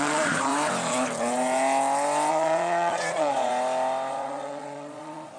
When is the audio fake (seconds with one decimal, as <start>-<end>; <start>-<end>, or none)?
0.0-0.5; 2.3-3.5; 4.1-5.4